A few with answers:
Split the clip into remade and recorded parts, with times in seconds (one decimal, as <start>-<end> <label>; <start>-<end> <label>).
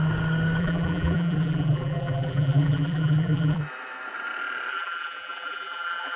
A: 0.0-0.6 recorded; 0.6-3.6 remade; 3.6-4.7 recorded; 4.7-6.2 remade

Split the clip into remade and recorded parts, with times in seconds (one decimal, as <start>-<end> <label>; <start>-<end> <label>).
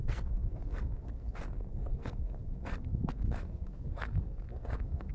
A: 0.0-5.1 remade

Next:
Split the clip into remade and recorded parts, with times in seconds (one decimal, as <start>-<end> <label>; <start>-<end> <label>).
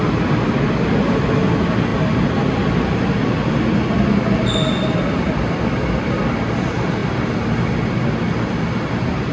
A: 0.0-9.3 recorded